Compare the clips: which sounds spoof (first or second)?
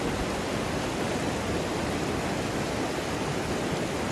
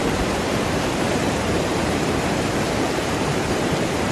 second